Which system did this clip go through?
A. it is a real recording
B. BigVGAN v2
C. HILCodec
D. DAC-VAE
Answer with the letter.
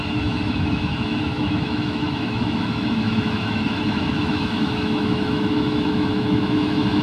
D